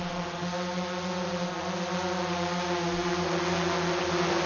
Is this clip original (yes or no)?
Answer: yes